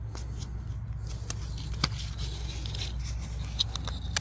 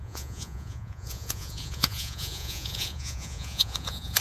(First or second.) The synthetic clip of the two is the second